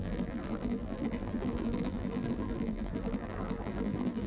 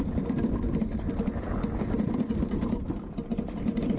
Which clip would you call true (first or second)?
second